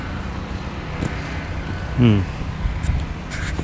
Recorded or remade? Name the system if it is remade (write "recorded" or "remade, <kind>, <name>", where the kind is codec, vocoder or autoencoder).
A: recorded